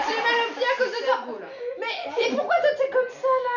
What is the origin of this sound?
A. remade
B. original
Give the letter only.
B